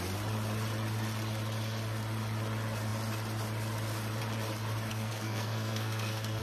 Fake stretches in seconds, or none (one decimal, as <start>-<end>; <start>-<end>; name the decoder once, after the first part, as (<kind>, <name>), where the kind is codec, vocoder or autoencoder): 4.9-6.4 (codec, SNAC)